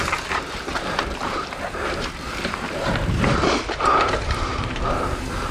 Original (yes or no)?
no